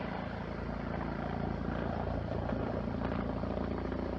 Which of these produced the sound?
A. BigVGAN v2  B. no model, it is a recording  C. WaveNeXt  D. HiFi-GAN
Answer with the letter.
B